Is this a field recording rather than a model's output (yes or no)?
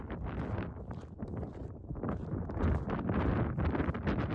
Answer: yes